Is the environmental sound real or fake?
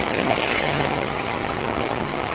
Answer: fake